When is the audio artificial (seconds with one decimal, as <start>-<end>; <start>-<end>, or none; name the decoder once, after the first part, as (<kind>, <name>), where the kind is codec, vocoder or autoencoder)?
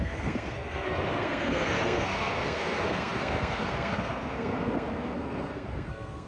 0.0-6.3 (codec, SNAC)